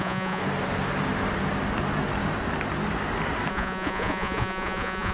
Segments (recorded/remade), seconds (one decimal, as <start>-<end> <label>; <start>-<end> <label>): 0.0-0.4 remade; 0.4-3.5 recorded; 3.5-5.1 remade